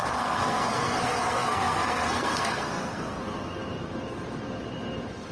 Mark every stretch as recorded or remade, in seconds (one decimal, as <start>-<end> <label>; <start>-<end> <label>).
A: 0.0-3.2 remade; 3.2-5.3 recorded